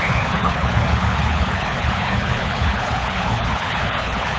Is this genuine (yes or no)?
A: no